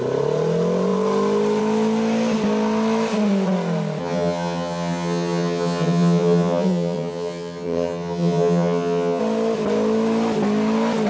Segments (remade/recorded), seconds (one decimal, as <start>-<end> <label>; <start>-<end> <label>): 0.0-4.0 recorded; 4.0-9.2 remade; 9.2-11.1 recorded